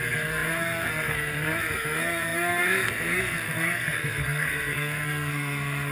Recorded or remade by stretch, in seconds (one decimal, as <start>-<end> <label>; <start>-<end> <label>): 0.0-5.9 remade